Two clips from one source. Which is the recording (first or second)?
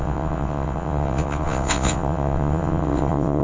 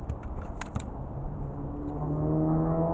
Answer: second